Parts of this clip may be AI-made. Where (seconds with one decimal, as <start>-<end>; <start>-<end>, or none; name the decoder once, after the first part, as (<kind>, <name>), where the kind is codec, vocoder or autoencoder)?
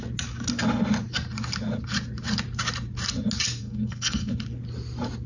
3.6-4.3 (codec, SNAC)